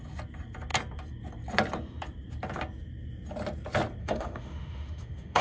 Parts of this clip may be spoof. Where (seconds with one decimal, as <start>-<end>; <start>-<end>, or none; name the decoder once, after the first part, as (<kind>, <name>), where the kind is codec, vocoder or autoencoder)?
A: 4.0-5.4 (autoencoder, DAC-VAE)